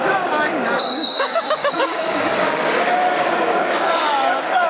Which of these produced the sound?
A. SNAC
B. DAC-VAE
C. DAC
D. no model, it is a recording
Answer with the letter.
C